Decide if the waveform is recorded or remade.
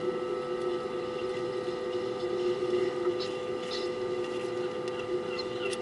recorded